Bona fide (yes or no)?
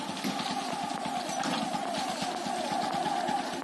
yes